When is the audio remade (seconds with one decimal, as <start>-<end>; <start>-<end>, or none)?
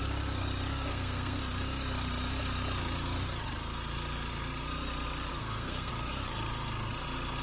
0.9-1.4; 5.3-5.9